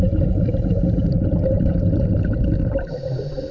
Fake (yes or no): no